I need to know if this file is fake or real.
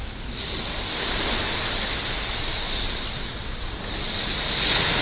real